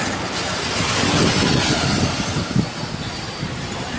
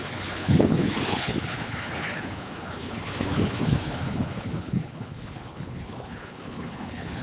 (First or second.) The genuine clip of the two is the first